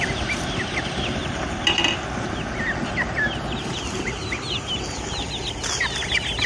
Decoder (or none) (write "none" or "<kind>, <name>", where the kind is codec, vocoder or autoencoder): none